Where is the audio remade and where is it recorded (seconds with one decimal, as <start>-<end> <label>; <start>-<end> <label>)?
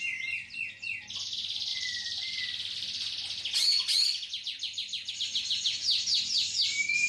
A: 0.0-1.7 recorded; 1.7-5.1 remade; 5.1-7.1 recorded